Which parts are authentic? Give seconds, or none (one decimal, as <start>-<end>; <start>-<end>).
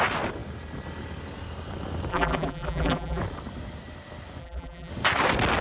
0.0-2.1; 3.2-4.4; 4.9-5.6